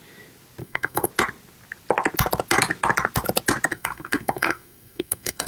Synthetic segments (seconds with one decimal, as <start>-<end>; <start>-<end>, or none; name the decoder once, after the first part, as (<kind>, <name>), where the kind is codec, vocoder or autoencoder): 0.6-1.1 (codec, SNAC); 3.7-5.5